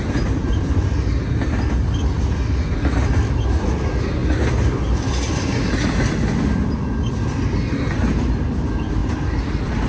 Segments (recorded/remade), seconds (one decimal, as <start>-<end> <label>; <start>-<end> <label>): 0.0-9.9 recorded